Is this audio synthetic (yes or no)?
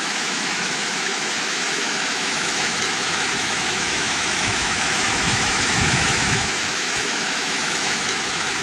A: yes